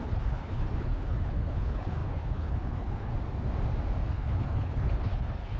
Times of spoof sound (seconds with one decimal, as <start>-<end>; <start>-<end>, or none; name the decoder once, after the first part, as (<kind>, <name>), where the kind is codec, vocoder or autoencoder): 0.0-3.1 (codec, HILCodec); 4.1-5.6